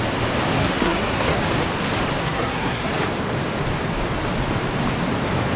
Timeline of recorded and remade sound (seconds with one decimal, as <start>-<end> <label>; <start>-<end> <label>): 0.0-0.6 recorded; 0.6-1.4 remade; 1.4-2.2 recorded; 2.2-2.9 remade; 2.9-5.6 recorded